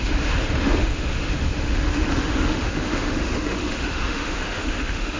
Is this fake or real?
fake